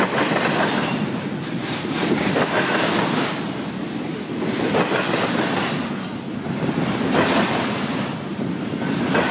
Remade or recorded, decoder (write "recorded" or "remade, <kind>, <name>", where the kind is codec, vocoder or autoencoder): recorded